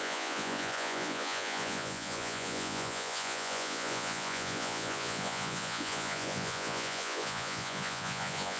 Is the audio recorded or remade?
remade